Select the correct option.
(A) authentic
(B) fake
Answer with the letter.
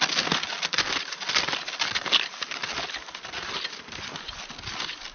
A